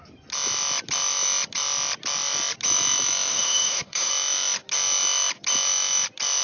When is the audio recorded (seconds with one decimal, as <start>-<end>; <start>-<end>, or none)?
0.0-3.3; 4.1-6.4